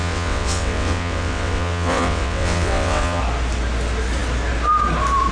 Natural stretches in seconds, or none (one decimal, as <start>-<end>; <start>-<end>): 3.2-5.3